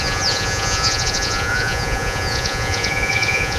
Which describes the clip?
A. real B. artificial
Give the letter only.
B